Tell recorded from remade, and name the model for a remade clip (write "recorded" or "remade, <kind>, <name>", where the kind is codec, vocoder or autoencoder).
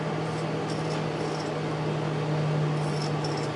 recorded